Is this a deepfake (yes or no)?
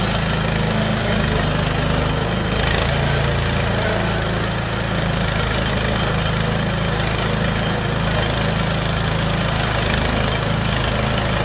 no